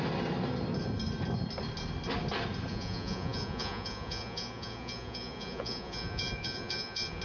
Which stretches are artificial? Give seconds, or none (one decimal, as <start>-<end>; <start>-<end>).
2.7-7.2